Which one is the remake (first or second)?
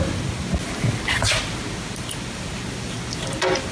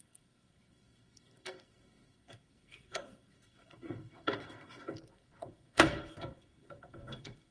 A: second